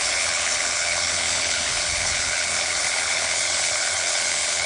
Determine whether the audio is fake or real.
fake